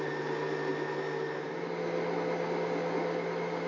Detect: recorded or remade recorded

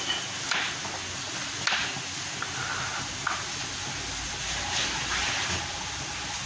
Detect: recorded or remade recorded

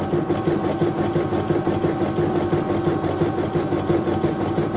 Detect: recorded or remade recorded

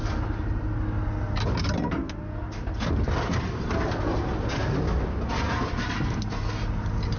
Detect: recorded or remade recorded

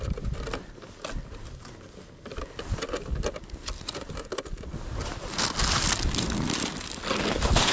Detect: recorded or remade recorded